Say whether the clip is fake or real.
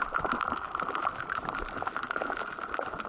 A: real